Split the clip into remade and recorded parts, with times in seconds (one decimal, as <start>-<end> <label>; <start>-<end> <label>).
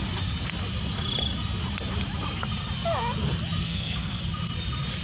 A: 0.0-3.6 recorded; 3.6-4.2 remade; 4.2-5.0 recorded